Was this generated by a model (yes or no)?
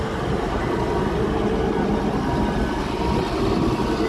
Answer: no